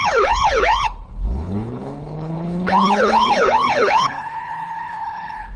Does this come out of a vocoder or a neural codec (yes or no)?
yes